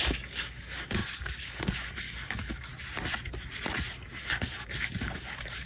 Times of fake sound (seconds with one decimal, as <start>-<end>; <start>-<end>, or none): 0.0-2.7; 4.2-5.7